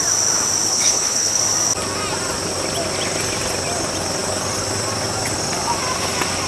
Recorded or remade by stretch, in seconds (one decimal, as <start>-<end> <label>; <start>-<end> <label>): 0.0-0.7 recorded; 0.7-1.4 remade; 1.4-6.5 recorded